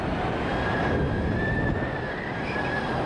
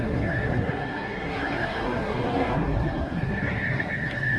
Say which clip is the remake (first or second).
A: second